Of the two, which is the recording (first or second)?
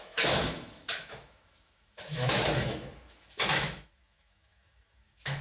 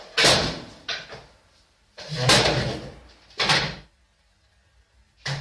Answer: second